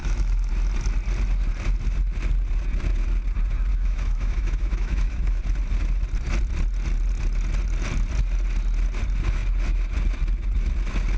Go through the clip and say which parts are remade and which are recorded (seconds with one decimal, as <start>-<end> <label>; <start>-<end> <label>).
0.0-0.5 remade; 0.5-3.7 recorded; 3.7-5.4 remade; 5.4-11.2 recorded